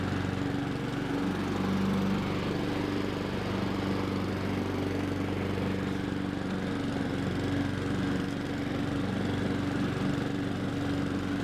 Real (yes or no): yes